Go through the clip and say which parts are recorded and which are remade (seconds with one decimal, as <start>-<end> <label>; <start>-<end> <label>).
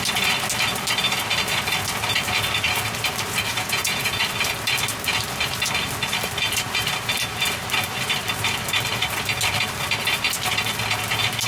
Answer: 0.0-3.5 recorded; 3.5-4.2 remade; 4.2-11.5 recorded